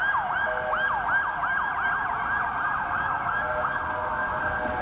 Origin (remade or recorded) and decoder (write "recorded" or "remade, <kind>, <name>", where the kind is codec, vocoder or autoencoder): recorded